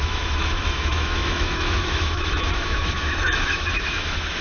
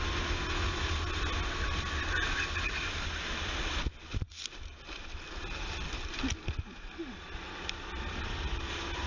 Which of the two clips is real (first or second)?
second